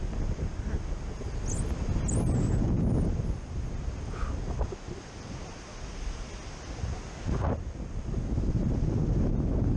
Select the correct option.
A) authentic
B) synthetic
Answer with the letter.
A